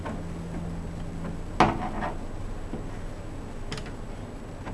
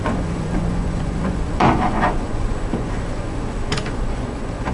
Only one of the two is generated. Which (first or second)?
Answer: second